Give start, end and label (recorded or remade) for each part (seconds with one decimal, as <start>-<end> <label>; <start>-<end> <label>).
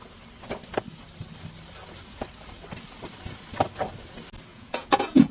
0.0-4.5 recorded; 4.5-5.3 remade